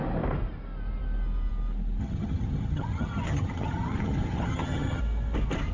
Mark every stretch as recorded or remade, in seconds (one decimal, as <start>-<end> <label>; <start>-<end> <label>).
0.0-2.0 recorded; 2.0-5.0 remade; 5.0-5.7 recorded